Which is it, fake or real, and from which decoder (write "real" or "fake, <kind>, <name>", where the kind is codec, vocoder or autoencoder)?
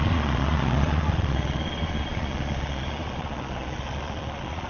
fake, vocoder, Vocos